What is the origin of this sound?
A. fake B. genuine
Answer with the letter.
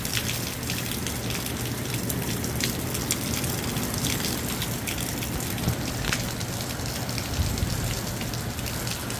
B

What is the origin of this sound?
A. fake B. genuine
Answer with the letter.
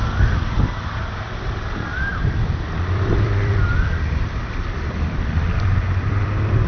A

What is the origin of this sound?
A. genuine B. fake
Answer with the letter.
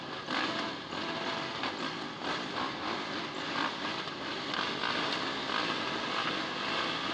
A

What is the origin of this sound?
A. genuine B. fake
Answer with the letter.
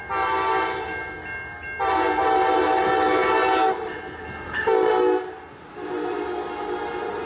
A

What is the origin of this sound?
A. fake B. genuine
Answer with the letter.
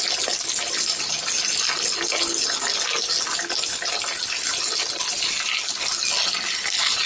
B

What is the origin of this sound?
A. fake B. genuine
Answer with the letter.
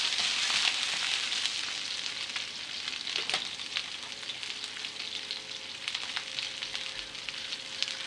B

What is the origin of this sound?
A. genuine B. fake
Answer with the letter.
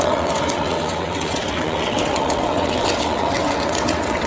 B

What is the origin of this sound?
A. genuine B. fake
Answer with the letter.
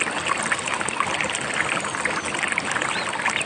A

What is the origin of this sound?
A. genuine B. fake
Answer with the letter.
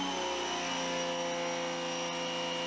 A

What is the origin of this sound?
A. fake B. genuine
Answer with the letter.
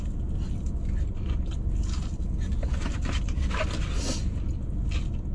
B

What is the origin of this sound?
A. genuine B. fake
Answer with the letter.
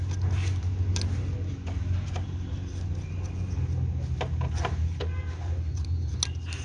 A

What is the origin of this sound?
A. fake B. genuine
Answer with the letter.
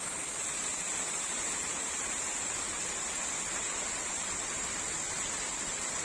B